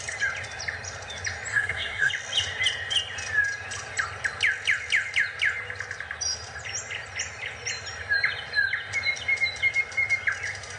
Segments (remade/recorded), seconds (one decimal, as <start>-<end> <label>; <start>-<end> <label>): 0.0-1.5 recorded; 1.5-2.1 remade; 2.1-10.8 recorded